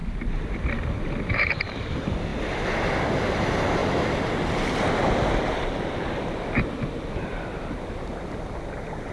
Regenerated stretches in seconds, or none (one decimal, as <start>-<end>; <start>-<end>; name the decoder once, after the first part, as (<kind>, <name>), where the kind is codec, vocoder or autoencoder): none